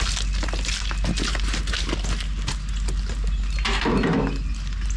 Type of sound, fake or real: real